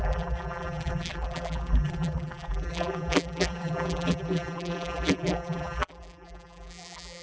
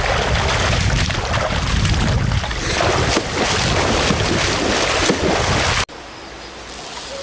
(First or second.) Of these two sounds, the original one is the second